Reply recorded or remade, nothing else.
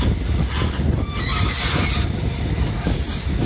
recorded